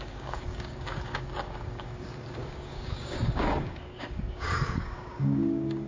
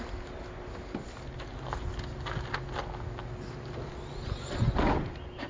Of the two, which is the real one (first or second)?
second